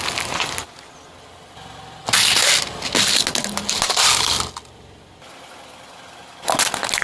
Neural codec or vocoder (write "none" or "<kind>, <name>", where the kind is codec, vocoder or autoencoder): none